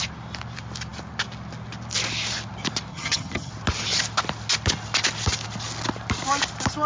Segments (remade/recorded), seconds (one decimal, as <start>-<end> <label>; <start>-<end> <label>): 0.0-2.9 recorded; 2.9-3.5 remade; 3.5-6.9 recorded